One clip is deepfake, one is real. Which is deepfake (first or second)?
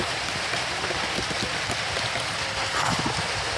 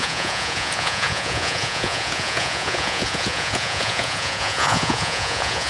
second